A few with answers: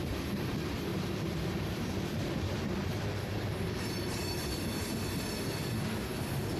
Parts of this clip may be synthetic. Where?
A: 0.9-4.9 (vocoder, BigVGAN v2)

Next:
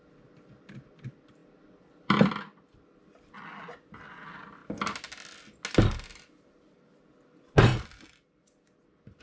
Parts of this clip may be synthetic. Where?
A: 1.4-2.3 (vocoder, BigVGAN v2); 7.7-9.2

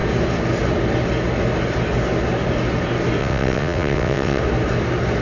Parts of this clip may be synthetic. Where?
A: 3.2-4.4 (vocoder, WaveNeXt)